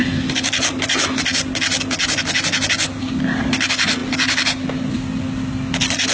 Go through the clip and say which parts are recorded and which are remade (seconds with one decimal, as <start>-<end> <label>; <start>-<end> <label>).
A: 0.0-6.1 recorded